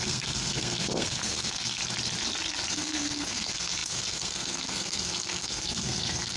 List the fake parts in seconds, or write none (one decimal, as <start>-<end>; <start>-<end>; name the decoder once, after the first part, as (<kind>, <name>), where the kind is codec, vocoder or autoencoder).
0.0-1.8 (codec, SNAC); 2.7-6.4